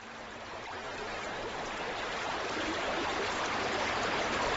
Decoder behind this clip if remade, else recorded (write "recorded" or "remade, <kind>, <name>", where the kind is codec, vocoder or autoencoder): remade, vocoder, BigVGAN v2